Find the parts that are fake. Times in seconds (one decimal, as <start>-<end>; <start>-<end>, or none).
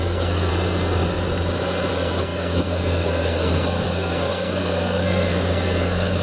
0.0-0.5; 1.9-6.2